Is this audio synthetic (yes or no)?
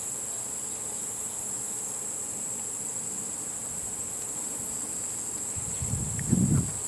no